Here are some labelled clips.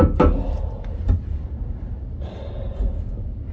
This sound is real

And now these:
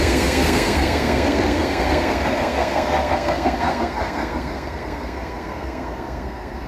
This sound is fake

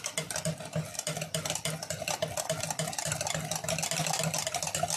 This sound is real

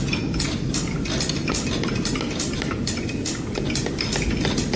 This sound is real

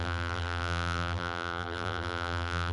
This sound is fake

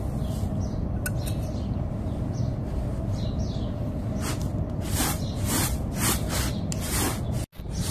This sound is real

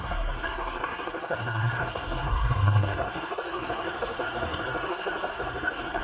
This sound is fake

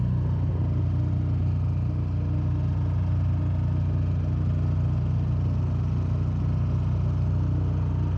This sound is real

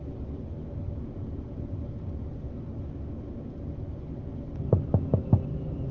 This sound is real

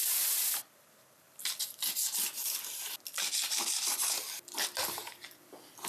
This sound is real